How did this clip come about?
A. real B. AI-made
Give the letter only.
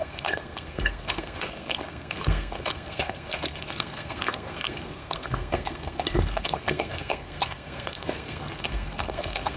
B